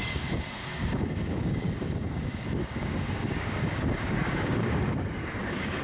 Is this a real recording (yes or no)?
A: no